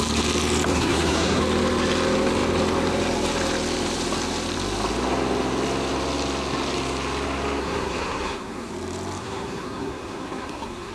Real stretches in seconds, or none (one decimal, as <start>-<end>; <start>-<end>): 0.0-0.7; 1.4-7.6; 8.7-9.2